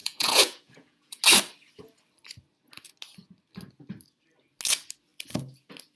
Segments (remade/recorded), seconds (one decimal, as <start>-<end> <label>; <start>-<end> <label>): 0.0-1.2 remade; 1.2-6.0 recorded